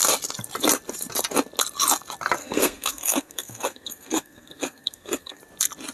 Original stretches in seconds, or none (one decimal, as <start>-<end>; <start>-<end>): 0.0-2.4; 5.4-5.9